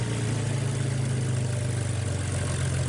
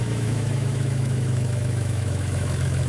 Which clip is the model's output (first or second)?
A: second